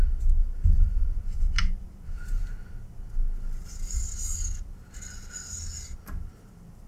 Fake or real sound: real